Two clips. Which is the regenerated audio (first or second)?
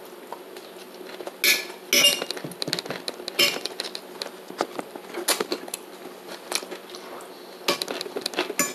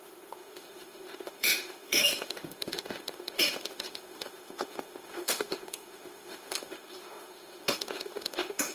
second